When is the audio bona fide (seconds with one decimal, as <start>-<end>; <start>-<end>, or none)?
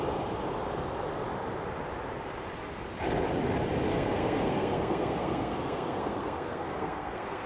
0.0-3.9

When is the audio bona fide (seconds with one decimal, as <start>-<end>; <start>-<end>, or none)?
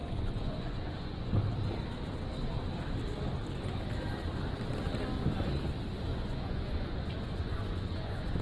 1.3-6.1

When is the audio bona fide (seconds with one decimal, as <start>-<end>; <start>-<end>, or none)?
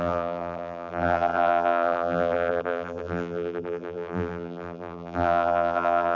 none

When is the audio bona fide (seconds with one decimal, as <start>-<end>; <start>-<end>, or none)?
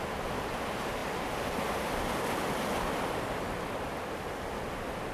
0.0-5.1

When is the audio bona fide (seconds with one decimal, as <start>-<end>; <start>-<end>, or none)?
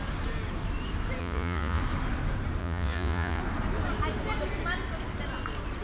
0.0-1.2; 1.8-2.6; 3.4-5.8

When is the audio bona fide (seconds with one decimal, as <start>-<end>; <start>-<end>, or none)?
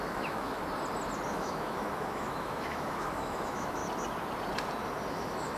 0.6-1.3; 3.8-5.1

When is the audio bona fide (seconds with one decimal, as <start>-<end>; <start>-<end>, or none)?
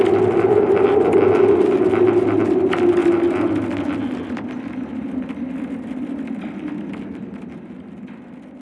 0.0-8.6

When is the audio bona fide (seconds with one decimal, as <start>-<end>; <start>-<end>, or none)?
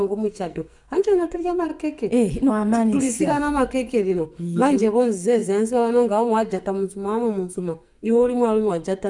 1.7-2.5